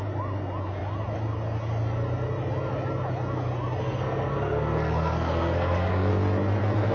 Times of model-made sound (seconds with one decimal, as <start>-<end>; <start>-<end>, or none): 3.8-6.1